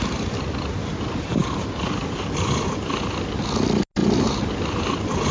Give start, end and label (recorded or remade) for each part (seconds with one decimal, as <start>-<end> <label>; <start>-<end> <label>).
0.0-5.3 recorded